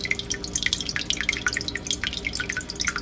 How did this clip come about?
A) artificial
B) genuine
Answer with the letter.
B